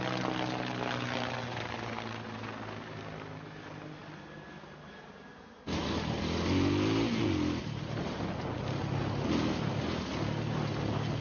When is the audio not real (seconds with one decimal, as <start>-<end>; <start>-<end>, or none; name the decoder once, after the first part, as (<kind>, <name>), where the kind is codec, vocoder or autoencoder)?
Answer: none